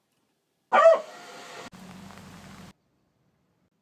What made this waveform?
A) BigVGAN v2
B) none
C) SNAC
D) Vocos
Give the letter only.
B